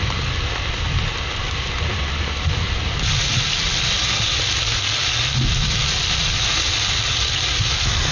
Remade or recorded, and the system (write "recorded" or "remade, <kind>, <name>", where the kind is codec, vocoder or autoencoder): recorded